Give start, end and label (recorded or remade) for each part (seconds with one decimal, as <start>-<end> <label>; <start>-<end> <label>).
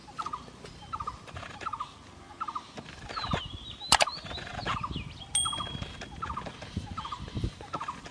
0.0-1.4 remade; 1.4-8.1 recorded